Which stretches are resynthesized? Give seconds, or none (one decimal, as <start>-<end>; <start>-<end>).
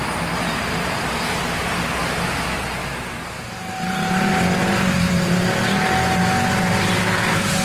none